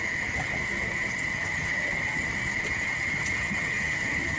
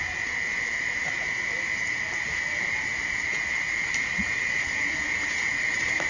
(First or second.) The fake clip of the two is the first